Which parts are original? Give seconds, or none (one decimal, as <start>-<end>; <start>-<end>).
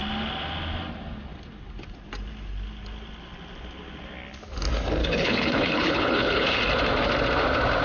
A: 0.0-5.0; 6.6-7.8